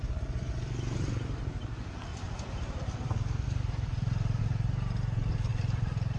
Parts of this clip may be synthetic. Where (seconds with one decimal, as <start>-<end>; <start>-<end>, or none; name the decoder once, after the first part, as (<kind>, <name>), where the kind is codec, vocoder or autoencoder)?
2.1-4.4 (vocoder, BigVGAN v2); 5.5-6.2